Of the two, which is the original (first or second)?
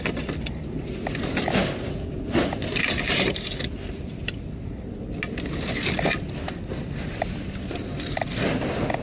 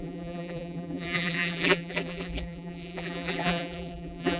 first